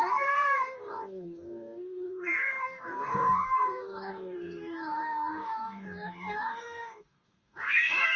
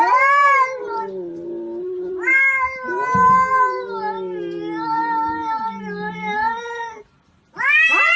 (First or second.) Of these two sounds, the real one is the second